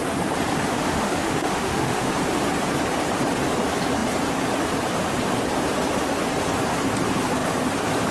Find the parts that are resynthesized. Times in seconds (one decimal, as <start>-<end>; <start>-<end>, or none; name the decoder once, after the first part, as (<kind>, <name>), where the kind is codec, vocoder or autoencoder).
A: 0.7-2.1 (autoencoder, DAC-VAE)